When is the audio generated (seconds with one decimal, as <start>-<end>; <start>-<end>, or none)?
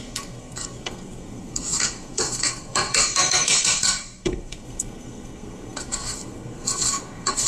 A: 0.0-7.5